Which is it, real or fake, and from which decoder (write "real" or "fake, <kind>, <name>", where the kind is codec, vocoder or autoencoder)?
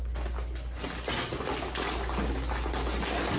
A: real